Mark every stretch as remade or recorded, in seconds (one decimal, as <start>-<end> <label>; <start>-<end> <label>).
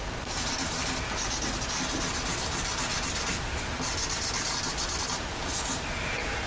0.0-6.5 recorded